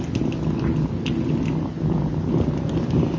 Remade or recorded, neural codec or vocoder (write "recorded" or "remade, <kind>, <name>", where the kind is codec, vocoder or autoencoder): recorded